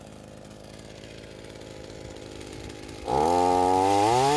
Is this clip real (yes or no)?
yes